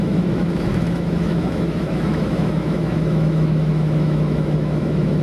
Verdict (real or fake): fake